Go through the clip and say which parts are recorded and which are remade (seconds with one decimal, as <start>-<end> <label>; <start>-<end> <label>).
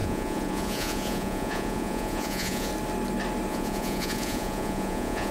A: 0.0-2.7 remade; 2.7-3.5 recorded; 3.5-5.3 remade